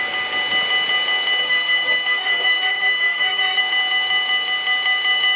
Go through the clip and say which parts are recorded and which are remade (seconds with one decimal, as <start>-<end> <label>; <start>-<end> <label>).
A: 0.0-1.4 recorded; 1.4-3.6 remade; 3.6-5.4 recorded